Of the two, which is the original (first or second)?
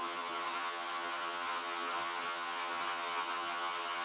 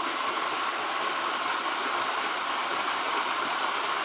second